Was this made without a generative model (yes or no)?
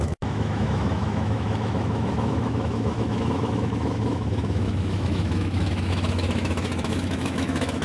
no